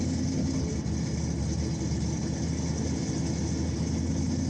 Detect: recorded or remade recorded